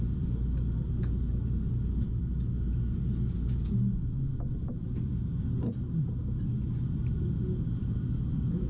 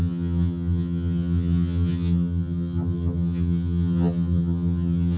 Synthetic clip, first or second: second